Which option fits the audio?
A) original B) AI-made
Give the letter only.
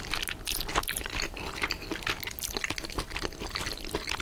A